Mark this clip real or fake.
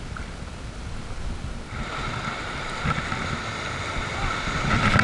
real